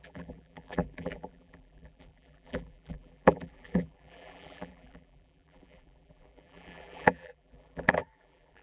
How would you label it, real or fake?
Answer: fake